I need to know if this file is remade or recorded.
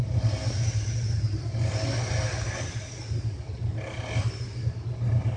recorded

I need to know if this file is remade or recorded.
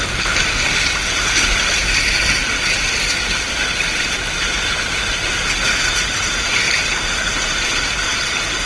recorded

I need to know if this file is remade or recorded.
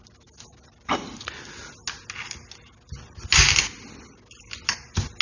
recorded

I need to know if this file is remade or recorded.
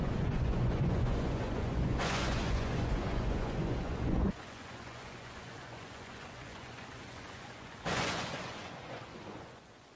remade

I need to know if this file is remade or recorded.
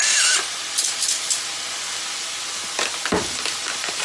recorded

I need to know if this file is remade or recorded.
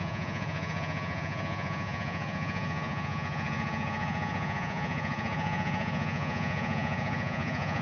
remade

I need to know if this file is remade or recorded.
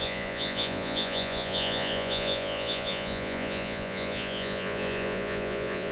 remade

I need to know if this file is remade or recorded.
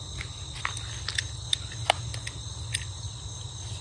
recorded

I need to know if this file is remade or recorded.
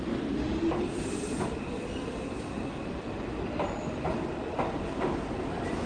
recorded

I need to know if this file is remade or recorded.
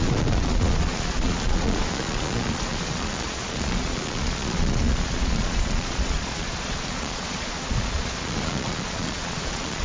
remade